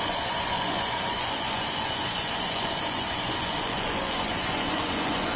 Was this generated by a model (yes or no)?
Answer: yes